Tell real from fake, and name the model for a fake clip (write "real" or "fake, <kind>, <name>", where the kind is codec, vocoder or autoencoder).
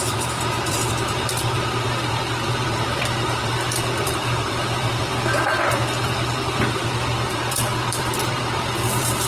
fake, vocoder, BigVGAN v2